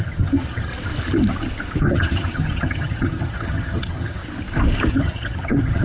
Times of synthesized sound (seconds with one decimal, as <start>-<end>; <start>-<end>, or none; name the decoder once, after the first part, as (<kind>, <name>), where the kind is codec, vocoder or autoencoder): 0.0-0.7 (vocoder, HiFi-GAN); 1.8-4.2; 4.9-5.8